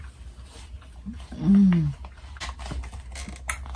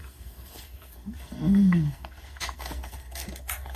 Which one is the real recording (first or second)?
first